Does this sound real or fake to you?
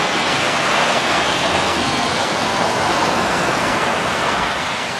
fake